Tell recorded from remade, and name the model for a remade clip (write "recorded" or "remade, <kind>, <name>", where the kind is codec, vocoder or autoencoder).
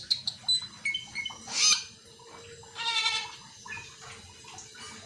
recorded